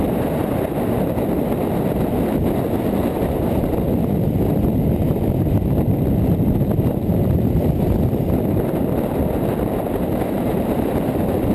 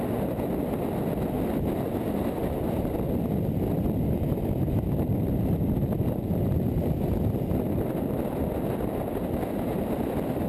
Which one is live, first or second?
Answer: second